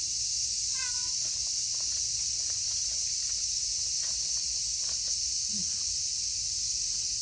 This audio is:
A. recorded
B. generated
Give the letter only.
A